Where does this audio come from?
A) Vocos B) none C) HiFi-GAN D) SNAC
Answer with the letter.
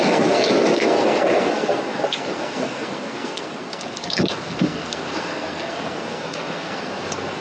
D